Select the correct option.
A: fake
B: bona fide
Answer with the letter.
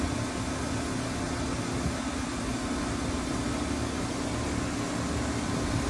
B